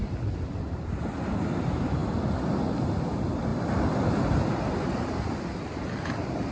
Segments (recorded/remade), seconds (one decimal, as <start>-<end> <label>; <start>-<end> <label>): 0.0-6.5 recorded